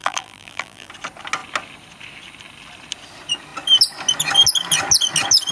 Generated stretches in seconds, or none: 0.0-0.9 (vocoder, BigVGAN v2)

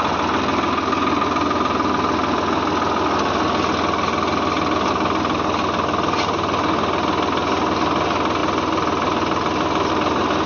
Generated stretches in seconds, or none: none

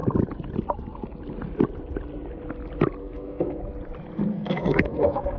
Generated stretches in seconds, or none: 3.0-3.6 (codec, SNAC); 4.3-5.4

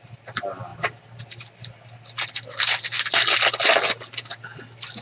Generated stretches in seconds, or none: none

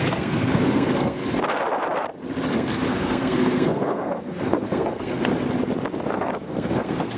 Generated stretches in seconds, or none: 0.0-1.2 (codec, SNAC); 2.5-5.3; 6.1-7.2